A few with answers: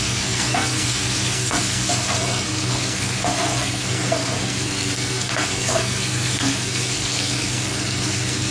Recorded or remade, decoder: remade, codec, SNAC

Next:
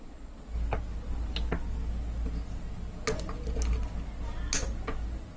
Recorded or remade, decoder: recorded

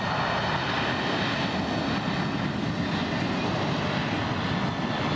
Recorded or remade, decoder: recorded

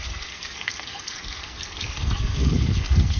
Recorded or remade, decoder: remade, codec, SNAC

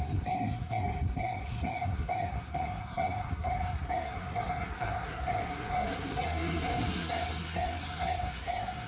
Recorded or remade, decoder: remade, codec, SNAC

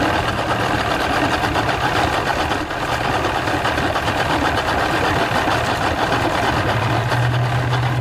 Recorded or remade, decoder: recorded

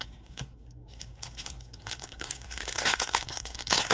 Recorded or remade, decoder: remade, codec, SNAC